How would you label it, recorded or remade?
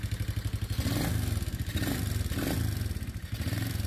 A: recorded